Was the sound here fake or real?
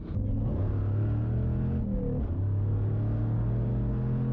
real